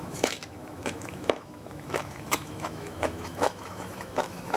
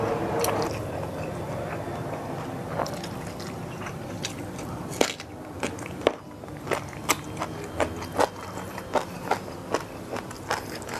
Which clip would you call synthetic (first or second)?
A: first